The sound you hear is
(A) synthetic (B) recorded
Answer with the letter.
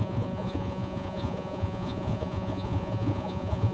A